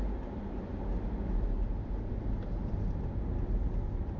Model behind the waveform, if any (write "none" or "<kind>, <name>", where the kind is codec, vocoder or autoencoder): none